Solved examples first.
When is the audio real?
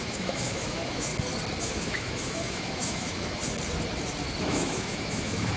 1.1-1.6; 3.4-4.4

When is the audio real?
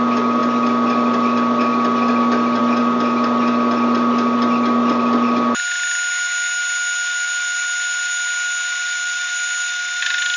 0.0-10.4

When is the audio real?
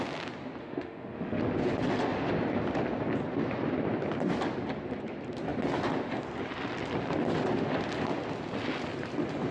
0.0-0.6; 1.4-9.5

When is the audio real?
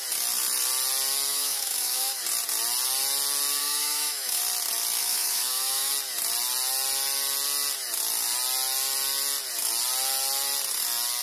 0.0-1.3; 2.2-3.6; 4.4-5.0; 5.9-11.2